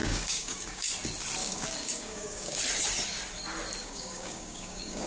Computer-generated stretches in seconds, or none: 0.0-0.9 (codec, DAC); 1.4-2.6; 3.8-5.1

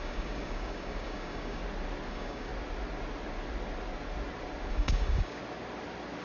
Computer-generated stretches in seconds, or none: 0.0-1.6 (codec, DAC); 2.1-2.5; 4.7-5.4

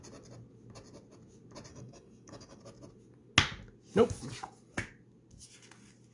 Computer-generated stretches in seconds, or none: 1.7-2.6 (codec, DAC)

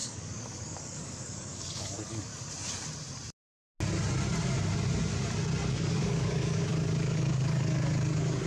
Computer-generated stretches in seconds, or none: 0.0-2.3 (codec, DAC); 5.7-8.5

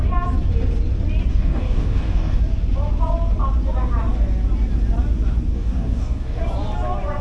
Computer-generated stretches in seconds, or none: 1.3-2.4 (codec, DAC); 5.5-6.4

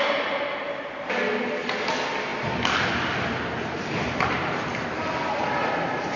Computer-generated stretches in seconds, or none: none

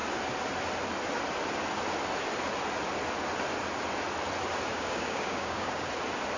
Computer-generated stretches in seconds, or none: 4.7-5.9 (codec, DAC)